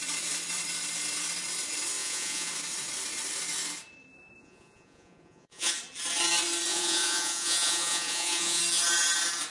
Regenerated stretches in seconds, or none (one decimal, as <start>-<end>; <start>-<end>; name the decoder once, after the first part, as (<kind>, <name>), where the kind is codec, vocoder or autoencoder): 2.0-2.5 (vocoder, Vocos); 4.4-5.7; 6.7-8.6